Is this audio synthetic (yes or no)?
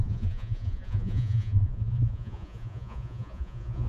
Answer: yes